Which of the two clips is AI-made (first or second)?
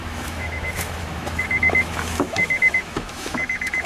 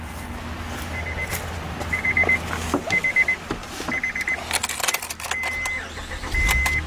first